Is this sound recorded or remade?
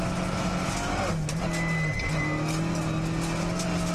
recorded